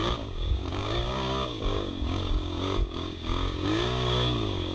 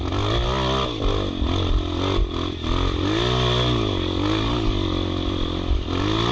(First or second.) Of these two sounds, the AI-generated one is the first